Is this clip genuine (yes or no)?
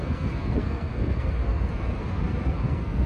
no